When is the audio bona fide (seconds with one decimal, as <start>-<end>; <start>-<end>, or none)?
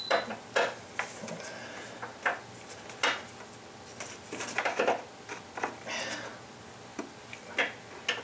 0.0-8.2